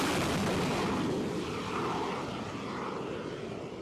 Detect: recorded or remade recorded